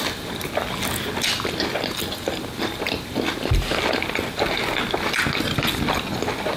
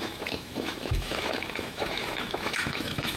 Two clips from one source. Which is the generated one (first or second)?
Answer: second